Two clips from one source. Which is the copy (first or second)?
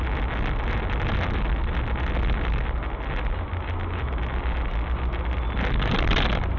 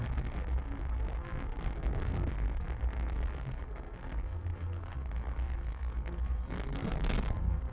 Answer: second